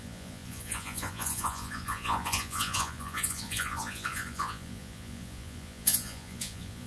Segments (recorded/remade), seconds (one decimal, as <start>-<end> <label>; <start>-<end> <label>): 0.0-6.9 remade